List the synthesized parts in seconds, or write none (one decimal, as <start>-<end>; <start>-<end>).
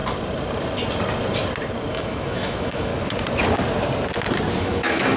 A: 1.9-2.9; 4.6-5.2